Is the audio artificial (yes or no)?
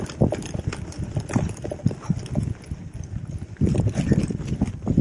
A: no